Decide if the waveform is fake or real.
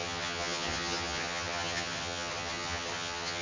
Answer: fake